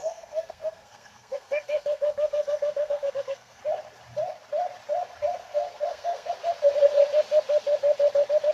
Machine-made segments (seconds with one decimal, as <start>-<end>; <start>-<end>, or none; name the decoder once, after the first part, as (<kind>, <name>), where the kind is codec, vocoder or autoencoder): 0.0-3.6 (codec, SNAC); 5.4-6.3